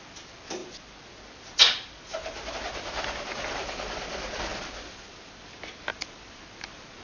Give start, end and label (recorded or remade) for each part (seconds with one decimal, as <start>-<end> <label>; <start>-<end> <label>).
0.0-7.0 recorded